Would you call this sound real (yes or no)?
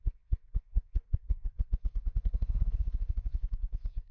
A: no